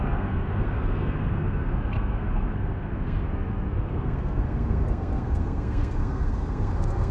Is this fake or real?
fake